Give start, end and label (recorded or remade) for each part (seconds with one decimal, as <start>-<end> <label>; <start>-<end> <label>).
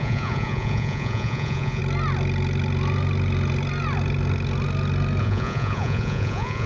0.0-1.8 remade; 1.8-5.2 recorded; 5.2-6.7 remade